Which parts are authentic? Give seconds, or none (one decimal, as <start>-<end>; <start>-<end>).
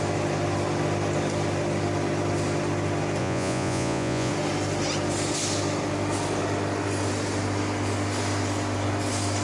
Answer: 0.0-3.2; 4.3-9.4